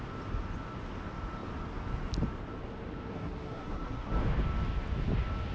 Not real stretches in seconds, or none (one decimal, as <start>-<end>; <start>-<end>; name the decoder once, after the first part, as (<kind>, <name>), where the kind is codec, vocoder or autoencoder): 3.1-4.1 (codec, SNAC)